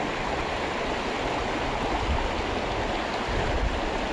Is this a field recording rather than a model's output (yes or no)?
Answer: yes